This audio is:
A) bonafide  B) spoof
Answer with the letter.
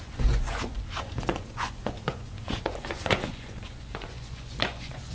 B